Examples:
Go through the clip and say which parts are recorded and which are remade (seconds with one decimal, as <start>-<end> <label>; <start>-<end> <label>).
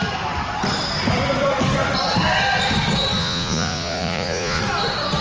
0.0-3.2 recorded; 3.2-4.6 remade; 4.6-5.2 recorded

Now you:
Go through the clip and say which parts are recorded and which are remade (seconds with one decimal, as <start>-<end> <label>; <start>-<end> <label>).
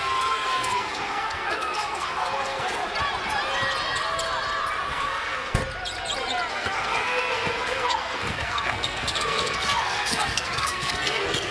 0.0-2.8 remade; 2.8-4.9 recorded; 4.9-5.6 remade; 5.6-6.5 recorded; 6.5-11.5 remade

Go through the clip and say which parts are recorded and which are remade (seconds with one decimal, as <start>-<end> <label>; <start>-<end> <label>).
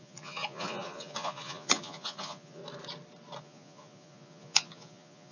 0.0-2.6 remade; 2.6-3.4 recorded; 3.4-5.3 remade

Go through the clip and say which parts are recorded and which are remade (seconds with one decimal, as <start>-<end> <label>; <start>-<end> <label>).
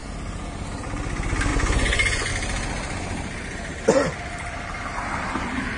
0.0-1.5 recorded; 1.5-2.3 remade; 2.3-5.8 recorded